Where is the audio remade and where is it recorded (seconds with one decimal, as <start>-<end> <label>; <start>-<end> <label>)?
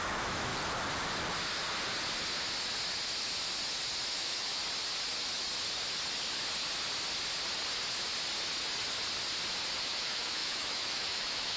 0.0-0.5 remade; 0.5-4.1 recorded; 4.1-4.6 remade; 4.6-9.8 recorded; 9.8-11.6 remade